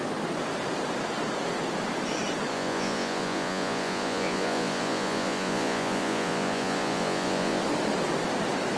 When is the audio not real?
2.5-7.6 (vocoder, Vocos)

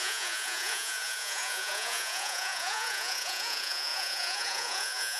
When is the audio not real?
0.0-5.2 (vocoder, Vocos)

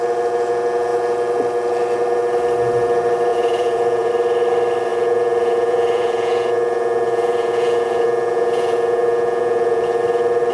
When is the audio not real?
3.3-4.1 (vocoder, Vocos); 4.9-10.0

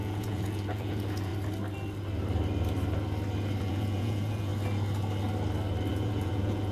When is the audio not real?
0.0-1.3 (vocoder, Vocos); 3.6-4.5; 5.9-6.7